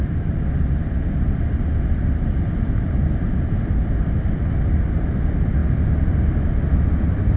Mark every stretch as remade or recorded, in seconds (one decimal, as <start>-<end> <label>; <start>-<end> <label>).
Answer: 0.0-7.4 recorded